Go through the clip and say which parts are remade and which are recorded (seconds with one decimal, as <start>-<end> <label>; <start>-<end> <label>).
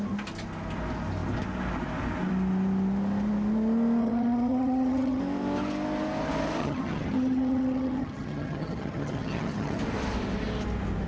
0.0-4.0 recorded; 4.0-5.2 remade; 5.2-6.6 recorded; 6.6-9.8 remade; 9.8-11.1 recorded